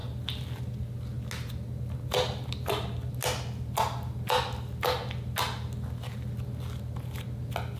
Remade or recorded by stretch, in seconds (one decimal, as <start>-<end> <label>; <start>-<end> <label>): 0.0-0.6 remade; 0.6-7.8 recorded